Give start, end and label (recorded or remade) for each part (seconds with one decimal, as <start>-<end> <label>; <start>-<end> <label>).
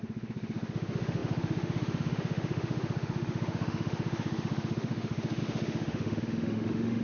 0.0-7.0 remade